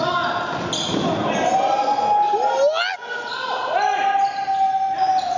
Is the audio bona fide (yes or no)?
yes